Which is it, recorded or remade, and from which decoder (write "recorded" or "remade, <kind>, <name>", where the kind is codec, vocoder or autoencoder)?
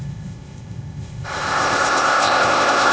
remade, codec, ZipCodec